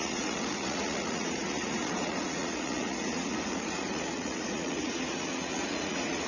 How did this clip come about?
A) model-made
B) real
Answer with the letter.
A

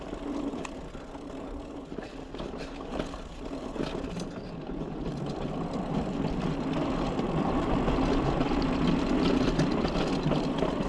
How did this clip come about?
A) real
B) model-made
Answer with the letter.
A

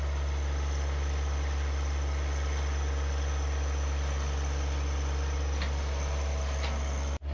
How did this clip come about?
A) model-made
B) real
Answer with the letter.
B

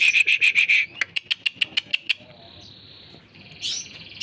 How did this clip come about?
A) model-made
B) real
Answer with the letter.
B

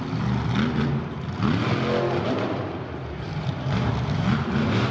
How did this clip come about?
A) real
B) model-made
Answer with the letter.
A